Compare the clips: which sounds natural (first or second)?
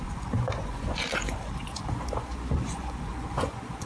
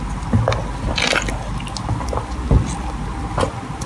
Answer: second